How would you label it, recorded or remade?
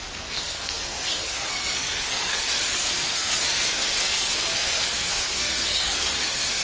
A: remade